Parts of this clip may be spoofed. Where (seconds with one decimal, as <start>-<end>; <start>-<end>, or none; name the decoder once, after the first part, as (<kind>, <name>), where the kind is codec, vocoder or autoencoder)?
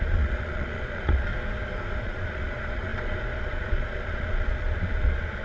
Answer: 0.0-1.3 (vocoder, Vocos); 2.0-5.4